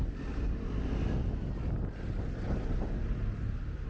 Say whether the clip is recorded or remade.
recorded